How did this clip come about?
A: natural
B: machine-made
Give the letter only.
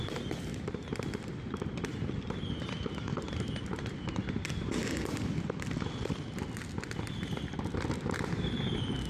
B